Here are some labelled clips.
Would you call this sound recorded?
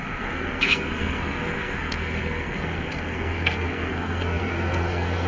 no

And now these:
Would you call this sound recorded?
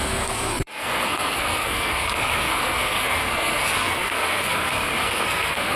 no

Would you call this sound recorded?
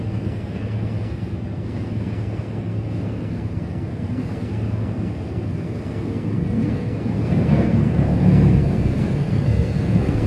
no